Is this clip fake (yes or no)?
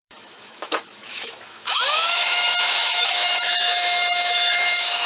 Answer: yes